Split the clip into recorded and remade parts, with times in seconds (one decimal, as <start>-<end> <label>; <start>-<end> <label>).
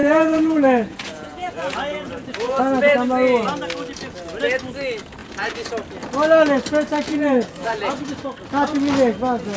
0.0-2.6 remade; 2.6-5.2 recorded; 5.2-5.7 remade; 5.7-7.1 recorded; 7.1-8.0 remade; 8.0-9.6 recorded